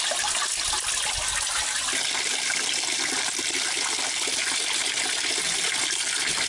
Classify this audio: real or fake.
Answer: real